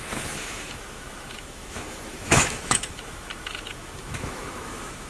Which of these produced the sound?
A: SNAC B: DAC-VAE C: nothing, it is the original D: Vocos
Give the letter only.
B